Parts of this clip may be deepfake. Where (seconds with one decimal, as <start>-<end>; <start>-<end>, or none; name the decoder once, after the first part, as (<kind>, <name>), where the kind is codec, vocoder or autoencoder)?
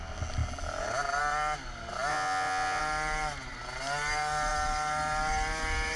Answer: 2.1-2.8 (vocoder, Vocos)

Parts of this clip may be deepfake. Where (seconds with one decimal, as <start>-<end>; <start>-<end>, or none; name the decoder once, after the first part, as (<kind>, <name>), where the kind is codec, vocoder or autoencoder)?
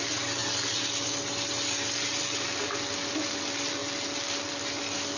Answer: none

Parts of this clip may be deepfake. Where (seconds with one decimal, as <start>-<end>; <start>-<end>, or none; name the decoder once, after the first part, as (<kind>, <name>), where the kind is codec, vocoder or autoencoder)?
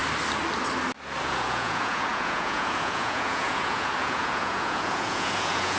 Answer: 1.2-5.8 (vocoder, Vocos)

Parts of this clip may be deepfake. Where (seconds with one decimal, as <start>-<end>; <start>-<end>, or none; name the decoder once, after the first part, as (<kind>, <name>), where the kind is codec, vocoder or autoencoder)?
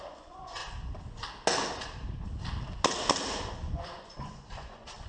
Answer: 0.0-0.6 (vocoder, Vocos); 3.5-5.1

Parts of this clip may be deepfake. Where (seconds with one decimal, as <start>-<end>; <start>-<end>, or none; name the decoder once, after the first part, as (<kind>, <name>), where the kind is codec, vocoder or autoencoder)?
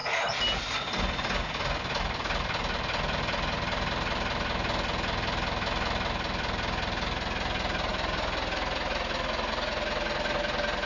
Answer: none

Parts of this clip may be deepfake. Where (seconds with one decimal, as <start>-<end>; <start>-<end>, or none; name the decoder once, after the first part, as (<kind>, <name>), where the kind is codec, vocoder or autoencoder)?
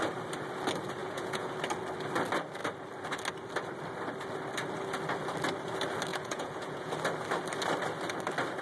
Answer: 1.0-1.5 (vocoder, Vocos); 6.1-6.9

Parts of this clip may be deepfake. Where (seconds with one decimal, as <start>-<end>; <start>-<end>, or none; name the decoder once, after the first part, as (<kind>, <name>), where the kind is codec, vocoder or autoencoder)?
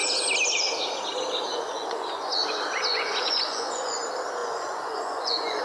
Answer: 1.5-2.3 (vocoder, Vocos); 2.9-4.0; 4.4-5.6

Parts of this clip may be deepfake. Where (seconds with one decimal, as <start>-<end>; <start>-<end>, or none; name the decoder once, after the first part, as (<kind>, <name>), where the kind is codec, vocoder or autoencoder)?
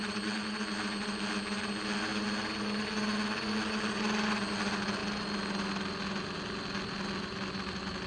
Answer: none